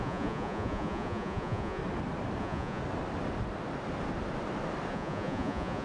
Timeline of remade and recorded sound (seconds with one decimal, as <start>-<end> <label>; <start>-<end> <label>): 0.0-1.8 remade; 1.8-2.4 recorded; 2.4-2.8 remade; 2.8-4.9 recorded; 4.9-5.8 remade